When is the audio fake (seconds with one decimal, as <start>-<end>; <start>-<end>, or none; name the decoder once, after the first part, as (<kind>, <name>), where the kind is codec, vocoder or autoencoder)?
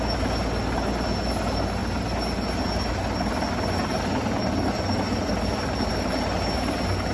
none